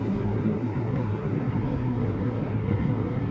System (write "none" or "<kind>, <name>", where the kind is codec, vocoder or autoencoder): codec, SNAC